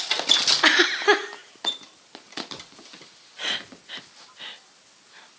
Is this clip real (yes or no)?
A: yes